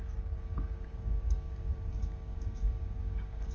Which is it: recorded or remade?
remade